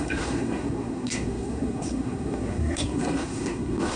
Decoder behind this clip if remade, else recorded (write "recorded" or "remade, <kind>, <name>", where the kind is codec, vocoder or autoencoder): remade, codec, SNAC